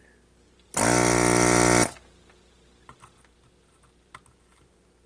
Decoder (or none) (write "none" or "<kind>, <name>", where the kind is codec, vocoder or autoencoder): none